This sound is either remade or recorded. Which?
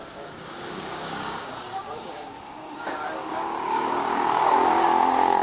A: remade